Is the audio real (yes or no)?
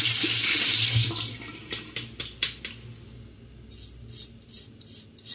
yes